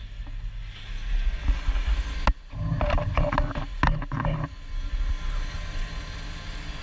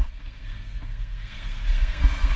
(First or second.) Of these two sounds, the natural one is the first